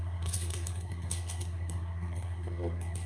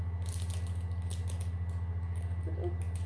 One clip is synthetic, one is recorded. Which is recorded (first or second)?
second